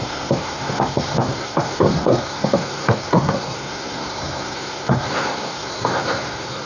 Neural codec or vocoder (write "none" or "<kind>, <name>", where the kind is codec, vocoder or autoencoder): codec, SNAC